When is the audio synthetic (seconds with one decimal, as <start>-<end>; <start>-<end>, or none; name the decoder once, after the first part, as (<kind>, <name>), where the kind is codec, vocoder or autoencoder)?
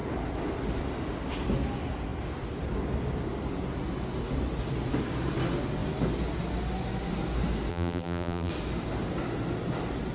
7.7-8.5 (vocoder, BigVGAN v2)